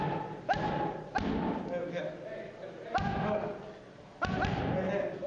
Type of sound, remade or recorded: recorded